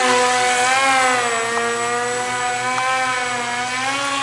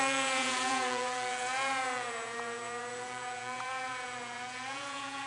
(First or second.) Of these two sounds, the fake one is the second